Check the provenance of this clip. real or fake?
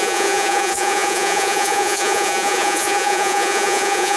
fake